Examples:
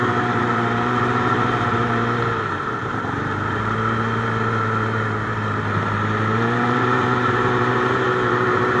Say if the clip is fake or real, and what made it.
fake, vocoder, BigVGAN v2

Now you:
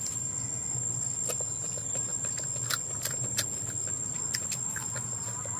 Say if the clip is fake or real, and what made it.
real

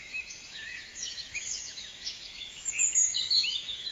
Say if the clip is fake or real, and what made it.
fake, autoencoder, DAC-VAE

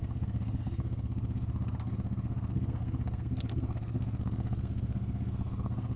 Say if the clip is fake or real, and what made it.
fake, codec, SNAC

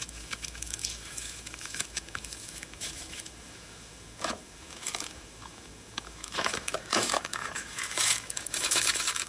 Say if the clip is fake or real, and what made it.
fake, autoencoder, DAC-VAE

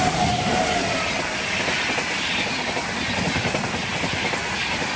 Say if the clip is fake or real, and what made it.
real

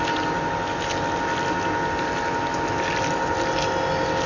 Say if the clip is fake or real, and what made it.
real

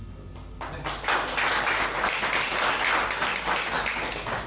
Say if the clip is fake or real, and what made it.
real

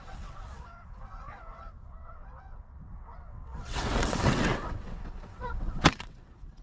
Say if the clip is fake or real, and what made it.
fake, vocoder, WaveNeXt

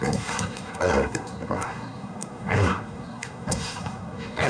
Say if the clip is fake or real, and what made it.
fake, codec, SNAC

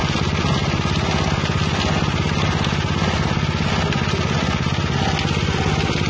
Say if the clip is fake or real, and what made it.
real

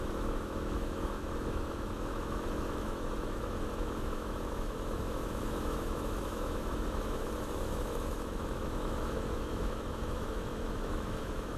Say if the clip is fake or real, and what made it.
fake, autoencoder, DAC-VAE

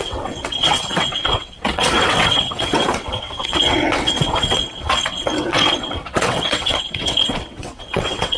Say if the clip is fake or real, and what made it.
fake, vocoder, WaveNeXt